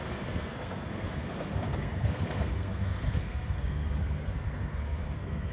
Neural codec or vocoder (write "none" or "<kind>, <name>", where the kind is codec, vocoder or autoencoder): codec, SNAC